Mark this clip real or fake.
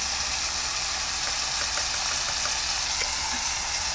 real